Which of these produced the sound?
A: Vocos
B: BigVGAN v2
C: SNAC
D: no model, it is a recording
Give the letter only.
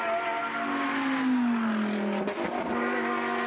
D